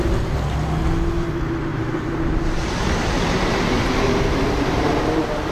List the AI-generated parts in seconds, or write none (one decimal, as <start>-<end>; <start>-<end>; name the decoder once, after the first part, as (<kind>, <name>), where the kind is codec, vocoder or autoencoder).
1.7-5.0 (vocoder, BigVGAN v2)